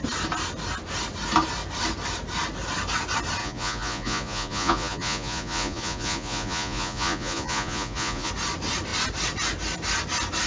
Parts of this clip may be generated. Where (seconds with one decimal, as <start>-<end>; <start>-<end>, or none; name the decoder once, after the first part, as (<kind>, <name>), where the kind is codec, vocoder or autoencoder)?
3.4-8.3 (vocoder, Vocos)

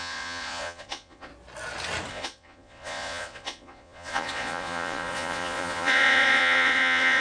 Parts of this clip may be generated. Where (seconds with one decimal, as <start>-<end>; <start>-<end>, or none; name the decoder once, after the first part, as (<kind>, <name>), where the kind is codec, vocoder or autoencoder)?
0.0-1.3 (vocoder, Vocos); 2.1-7.2

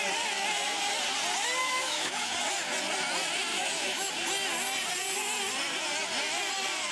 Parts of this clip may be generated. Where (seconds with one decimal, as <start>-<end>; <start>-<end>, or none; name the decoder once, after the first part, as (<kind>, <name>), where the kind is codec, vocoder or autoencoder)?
1.6-2.3 (autoencoder, DAC-VAE); 3.5-4.1

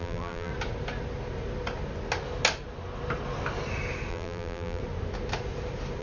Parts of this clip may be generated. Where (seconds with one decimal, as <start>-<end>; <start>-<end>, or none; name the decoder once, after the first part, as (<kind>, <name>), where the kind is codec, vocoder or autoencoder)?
0.0-0.5 (vocoder, BigVGAN v2); 4.1-4.8

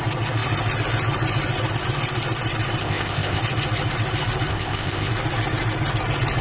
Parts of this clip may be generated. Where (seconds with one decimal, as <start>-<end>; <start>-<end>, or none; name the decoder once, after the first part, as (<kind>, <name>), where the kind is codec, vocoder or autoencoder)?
2.8-3.4 (codec, ZipCodec); 4.5-5.1

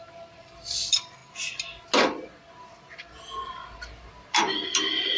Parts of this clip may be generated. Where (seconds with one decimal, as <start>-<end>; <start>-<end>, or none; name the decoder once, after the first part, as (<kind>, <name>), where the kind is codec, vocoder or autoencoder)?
0.0-1.2 (vocoder, BigVGAN v2); 4.3-5.2